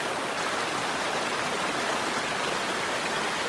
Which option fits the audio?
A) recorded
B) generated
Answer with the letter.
A